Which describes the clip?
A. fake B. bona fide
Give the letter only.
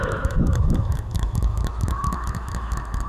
A